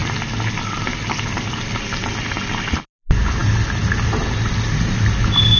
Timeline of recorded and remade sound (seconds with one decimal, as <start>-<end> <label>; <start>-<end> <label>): 0.0-5.6 recorded